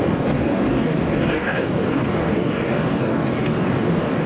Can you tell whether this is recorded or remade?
remade